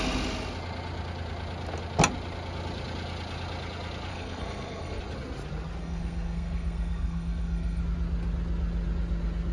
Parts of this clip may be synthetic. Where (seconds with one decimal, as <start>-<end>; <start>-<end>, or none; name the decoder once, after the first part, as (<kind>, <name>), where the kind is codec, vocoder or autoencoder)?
4.1-5.0 (codec, SNAC); 5.8-7.8